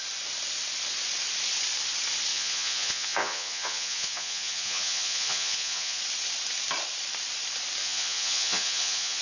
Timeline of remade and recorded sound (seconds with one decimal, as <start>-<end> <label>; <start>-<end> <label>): 0.0-2.3 recorded; 2.3-6.0 remade; 6.0-7.8 recorded; 7.8-9.2 remade